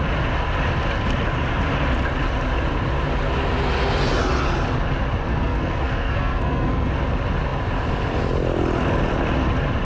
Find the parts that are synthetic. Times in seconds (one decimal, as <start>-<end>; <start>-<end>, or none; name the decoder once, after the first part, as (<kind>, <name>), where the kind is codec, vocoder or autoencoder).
5.3-6.9 (codec, SNAC)